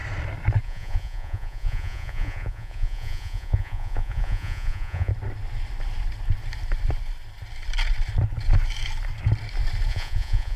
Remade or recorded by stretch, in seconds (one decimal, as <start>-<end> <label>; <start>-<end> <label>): 0.0-0.6 recorded; 0.6-5.1 remade; 5.1-9.9 recorded; 9.9-10.6 remade